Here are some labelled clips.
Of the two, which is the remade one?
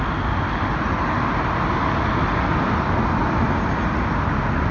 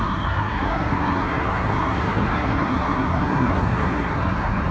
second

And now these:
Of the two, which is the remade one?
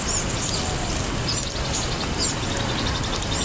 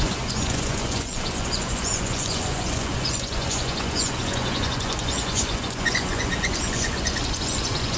second